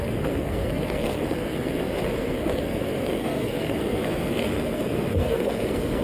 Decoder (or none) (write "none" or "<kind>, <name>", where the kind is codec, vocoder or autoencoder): codec, SNAC